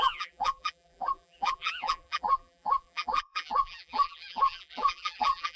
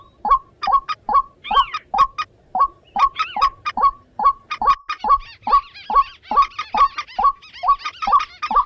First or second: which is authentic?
second